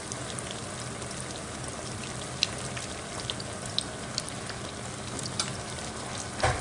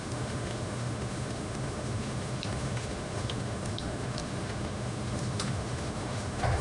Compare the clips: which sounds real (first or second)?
first